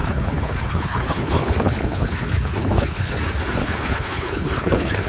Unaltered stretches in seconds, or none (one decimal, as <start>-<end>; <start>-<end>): 3.1-3.6